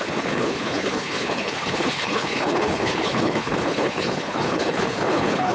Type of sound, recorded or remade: remade